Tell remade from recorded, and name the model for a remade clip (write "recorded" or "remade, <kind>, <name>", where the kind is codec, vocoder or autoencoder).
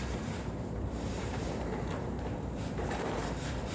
remade, vocoder, BigVGAN v2